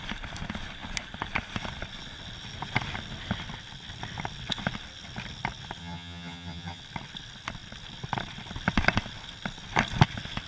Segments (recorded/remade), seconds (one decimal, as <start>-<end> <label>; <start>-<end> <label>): 0.0-5.8 recorded; 5.8-6.8 remade; 6.8-10.5 recorded